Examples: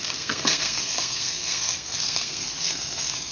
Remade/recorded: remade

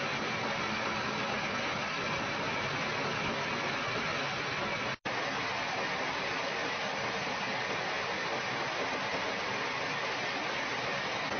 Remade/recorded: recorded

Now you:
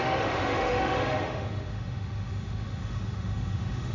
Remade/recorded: remade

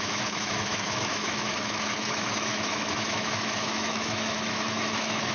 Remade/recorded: remade